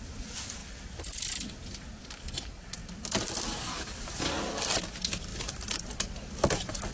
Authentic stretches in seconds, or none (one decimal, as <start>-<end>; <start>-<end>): 0.0-6.9